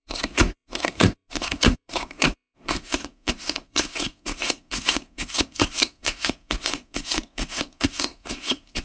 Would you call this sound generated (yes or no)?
yes